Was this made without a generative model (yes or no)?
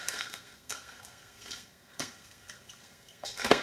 no